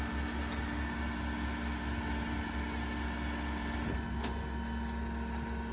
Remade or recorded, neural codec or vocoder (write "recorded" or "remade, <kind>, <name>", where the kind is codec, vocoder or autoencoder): recorded